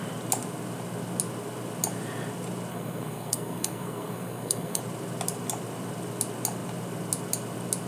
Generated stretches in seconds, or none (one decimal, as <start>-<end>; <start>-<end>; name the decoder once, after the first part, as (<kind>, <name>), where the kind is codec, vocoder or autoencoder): 2.7-4.8 (codec, SNAC)